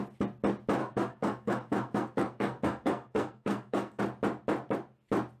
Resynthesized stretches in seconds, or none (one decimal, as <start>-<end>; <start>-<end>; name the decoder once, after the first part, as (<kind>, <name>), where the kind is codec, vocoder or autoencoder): 0.8-4.0 (codec, SNAC)